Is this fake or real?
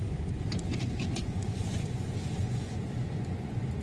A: fake